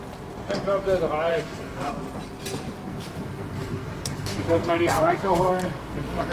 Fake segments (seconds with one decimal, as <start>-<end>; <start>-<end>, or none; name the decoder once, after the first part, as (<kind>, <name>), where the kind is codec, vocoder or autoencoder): 1.3-1.9 (codec, SNAC); 2.9-6.3